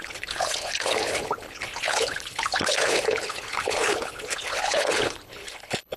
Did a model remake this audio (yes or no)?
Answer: yes